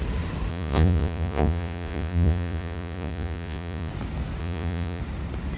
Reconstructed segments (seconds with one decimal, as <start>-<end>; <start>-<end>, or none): 0.5-3.9; 4.4-5.0